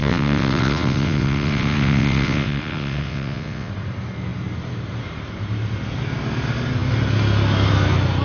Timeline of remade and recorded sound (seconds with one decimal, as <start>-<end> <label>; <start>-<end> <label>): 0.0-3.7 remade; 3.7-8.2 recorded